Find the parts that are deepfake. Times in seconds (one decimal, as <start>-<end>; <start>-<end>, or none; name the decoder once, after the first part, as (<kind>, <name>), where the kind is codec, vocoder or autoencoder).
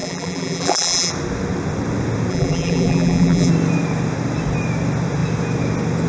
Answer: 0.0-1.1 (vocoder, BigVGAN v2); 2.3-3.5